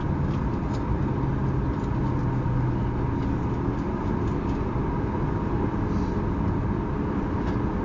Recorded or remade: recorded